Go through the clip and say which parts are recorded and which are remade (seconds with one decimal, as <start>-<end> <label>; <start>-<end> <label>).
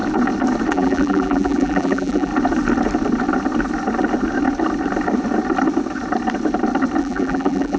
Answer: 0.0-0.7 recorded; 0.7-2.3 remade; 2.3-7.0 recorded; 7.0-7.8 remade